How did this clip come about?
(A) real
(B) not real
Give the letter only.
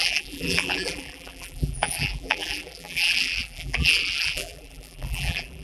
B